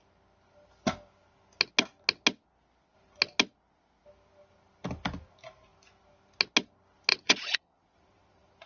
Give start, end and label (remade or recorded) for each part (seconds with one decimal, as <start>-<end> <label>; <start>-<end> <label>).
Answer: 0.0-7.1 recorded; 7.1-8.7 remade